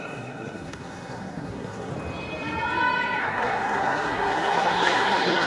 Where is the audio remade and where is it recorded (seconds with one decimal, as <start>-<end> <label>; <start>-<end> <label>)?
0.0-1.9 remade; 1.9-3.2 recorded; 3.2-5.5 remade